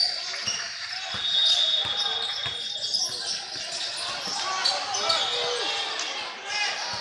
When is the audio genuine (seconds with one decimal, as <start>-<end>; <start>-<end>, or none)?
0.0-7.0